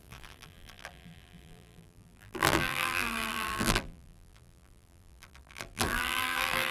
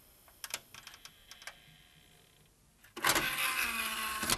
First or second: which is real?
second